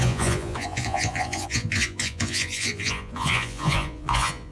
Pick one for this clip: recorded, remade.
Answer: remade